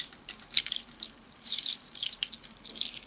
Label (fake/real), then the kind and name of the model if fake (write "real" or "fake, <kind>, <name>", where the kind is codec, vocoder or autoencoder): fake, vocoder, BigVGAN v2